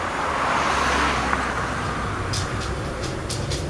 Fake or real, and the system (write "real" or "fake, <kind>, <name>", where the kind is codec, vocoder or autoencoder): real